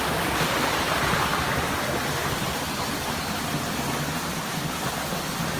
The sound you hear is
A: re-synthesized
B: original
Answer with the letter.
B